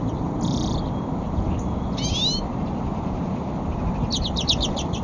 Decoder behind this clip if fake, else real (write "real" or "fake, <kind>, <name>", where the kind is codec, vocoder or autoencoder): real